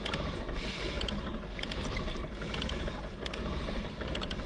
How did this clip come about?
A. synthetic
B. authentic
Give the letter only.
A